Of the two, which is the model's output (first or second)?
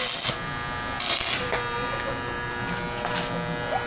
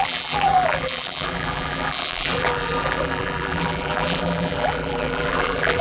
second